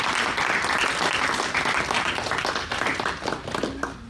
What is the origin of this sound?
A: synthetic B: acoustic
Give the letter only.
B